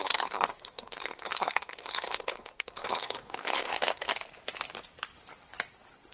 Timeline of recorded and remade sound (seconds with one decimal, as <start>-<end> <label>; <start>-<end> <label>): 0.0-4.1 remade; 4.1-6.1 recorded